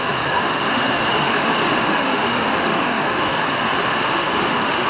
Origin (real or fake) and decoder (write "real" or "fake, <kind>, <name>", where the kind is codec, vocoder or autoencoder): fake, autoencoder, DAC-VAE